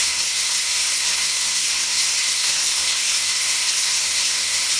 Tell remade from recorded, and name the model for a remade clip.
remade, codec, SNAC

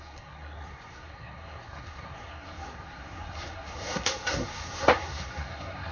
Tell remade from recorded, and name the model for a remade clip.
remade, codec, SNAC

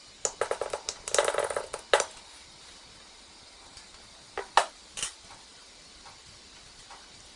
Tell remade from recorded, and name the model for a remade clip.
recorded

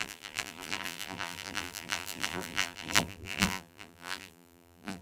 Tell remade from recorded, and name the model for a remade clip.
remade, vocoder, BigVGAN v2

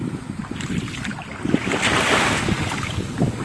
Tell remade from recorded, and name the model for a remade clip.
recorded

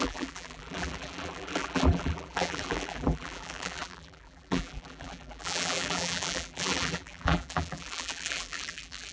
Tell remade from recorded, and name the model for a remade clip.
remade, vocoder, BigVGAN v2